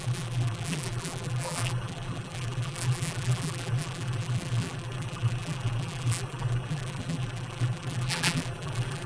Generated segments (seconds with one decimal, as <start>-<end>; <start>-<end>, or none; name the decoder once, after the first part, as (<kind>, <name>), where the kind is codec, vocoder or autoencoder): 0.0-9.1 (vocoder, BigVGAN v2)